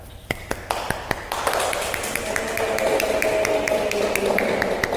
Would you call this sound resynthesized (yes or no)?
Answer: no